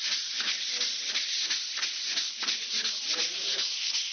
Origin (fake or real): real